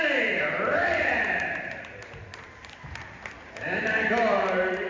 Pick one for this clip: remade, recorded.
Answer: remade